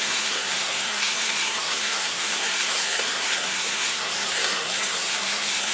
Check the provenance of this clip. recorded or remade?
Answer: remade